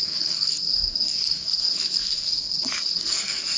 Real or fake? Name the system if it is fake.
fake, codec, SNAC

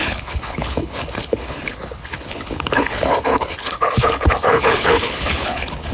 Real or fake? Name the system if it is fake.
fake, codec, HILCodec